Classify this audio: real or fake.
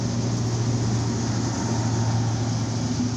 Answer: real